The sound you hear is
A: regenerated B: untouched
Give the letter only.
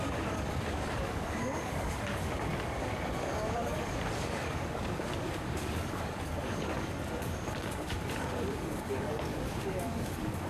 A